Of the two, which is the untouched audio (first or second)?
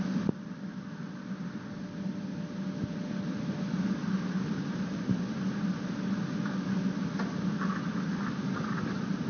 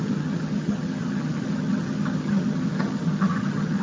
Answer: first